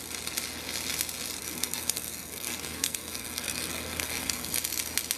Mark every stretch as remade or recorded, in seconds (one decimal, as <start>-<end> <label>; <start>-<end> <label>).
0.0-1.4 recorded; 1.4-4.5 remade; 4.5-5.2 recorded